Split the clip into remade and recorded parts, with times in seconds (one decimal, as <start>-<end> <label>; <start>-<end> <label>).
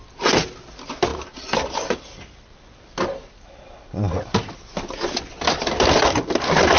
0.0-6.8 recorded